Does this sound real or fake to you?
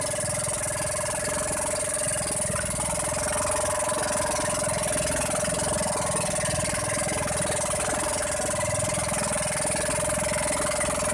real